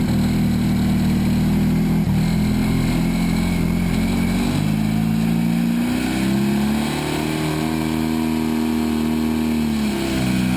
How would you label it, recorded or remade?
recorded